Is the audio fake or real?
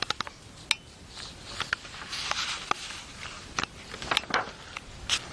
real